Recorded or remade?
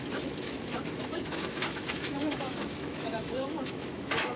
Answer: remade